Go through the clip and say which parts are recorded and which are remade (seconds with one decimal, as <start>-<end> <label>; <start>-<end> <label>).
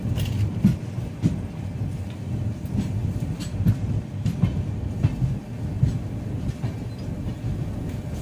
0.0-3.0 recorded; 3.0-3.7 remade; 3.7-8.2 recorded